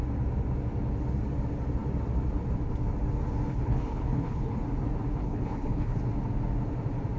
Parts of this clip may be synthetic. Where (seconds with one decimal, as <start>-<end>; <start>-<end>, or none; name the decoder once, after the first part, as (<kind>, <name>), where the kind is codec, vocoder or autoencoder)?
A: 3.5-4.6 (codec, HILCodec); 5.2-6.0